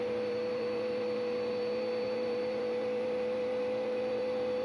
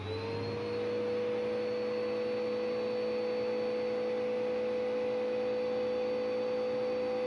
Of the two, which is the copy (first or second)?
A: first